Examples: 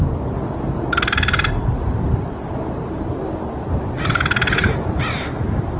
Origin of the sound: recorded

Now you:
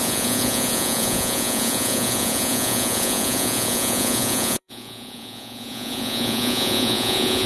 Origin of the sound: remade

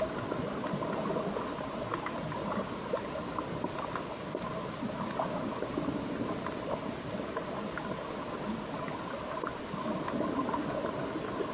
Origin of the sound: recorded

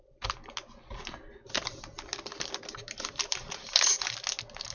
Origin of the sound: recorded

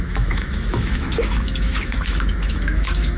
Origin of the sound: remade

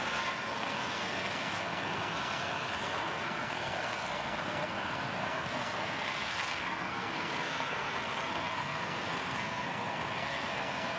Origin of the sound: remade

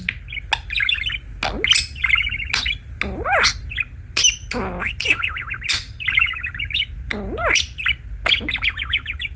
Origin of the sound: recorded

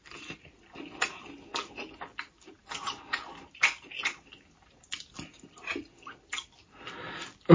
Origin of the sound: recorded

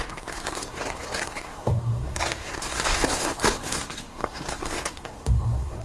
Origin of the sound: remade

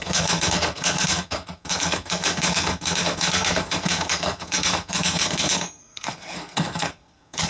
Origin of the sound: remade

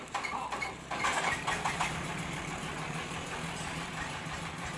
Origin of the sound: remade